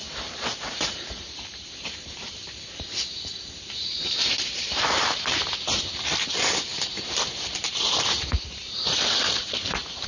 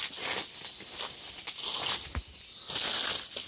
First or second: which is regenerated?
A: first